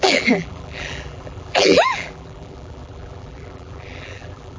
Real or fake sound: fake